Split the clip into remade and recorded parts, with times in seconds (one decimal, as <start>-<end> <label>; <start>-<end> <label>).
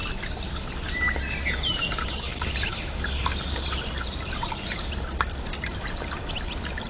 0.0-2.3 recorded; 2.3-4.5 remade; 4.5-5.5 recorded; 5.5-6.3 remade; 6.3-6.9 recorded